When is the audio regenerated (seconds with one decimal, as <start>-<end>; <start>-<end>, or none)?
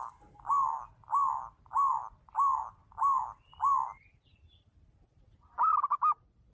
none